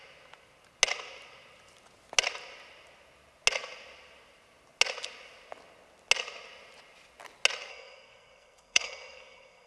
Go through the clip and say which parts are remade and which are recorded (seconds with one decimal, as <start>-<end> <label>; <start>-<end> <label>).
0.0-7.7 recorded; 7.7-9.7 remade